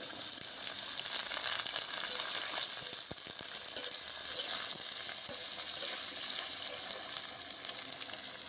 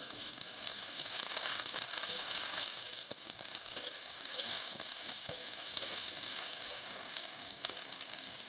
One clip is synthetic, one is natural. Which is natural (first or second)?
first